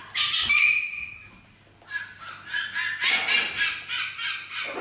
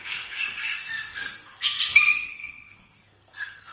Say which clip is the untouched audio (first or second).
first